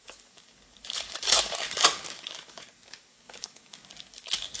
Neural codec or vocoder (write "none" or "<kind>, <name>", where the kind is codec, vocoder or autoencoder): codec, DAC